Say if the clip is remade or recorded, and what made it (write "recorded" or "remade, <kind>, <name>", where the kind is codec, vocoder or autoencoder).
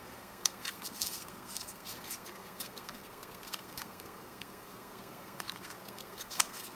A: remade, codec, SNAC